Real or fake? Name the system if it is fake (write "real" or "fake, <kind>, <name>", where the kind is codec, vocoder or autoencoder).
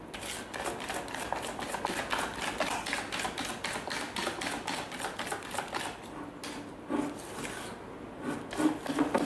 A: real